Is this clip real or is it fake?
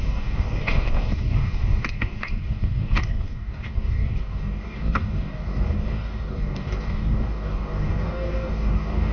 fake